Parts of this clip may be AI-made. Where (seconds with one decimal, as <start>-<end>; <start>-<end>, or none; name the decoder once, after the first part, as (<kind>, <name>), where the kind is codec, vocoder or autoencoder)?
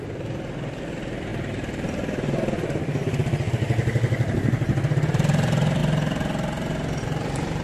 0.0-5.8 (vocoder, BigVGAN v2); 7.0-7.6